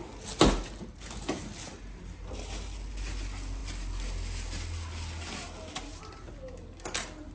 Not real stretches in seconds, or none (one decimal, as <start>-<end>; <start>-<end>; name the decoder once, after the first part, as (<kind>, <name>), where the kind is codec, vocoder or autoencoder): none